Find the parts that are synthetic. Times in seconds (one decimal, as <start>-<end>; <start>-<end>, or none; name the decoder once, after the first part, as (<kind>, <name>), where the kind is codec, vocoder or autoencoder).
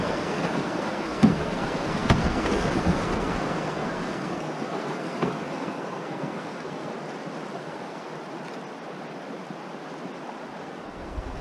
0.0-6.9 (codec, SNAC); 7.6-8.1; 10.6-11.4